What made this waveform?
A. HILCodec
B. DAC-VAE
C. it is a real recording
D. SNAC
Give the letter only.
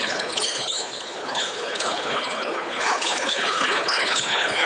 A